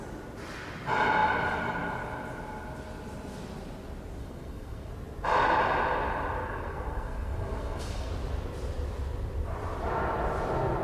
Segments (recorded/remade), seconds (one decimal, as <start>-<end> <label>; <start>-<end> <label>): 0.0-4.2 recorded; 4.2-4.9 remade; 4.9-6.4 recorded; 6.4-8.1 remade; 8.1-10.8 recorded